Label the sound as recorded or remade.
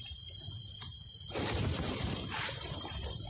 remade